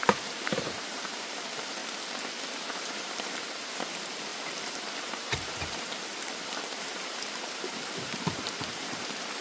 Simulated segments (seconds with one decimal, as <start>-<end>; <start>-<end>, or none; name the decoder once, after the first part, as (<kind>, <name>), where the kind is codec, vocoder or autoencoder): 0.0-1.8 (vocoder, BigVGAN v2); 2.4-4.3; 5.0-9.4